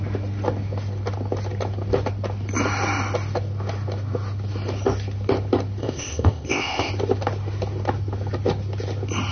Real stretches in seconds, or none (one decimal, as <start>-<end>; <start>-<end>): 0.0-5.8; 6.9-9.3